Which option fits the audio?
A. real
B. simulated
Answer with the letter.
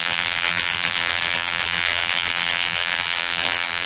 B